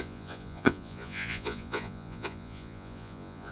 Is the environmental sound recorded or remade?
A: remade